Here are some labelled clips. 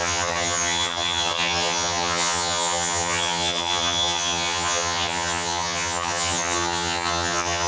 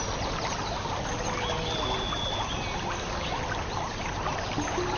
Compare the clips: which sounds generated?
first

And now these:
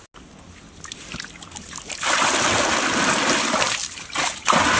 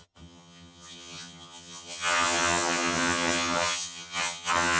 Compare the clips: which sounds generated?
second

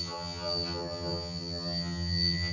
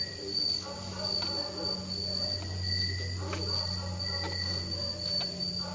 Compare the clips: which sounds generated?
first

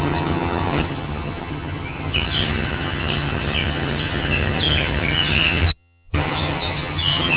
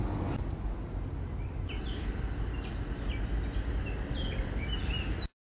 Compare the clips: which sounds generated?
first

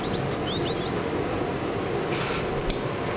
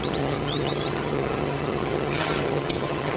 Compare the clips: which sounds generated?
second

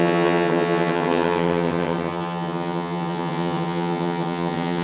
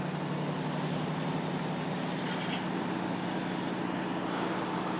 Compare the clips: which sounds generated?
first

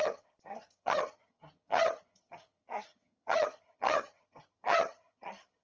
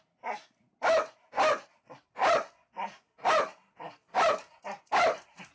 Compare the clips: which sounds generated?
first